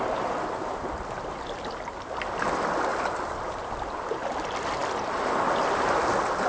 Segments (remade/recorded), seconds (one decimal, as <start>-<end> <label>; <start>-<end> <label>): 0.0-6.5 recorded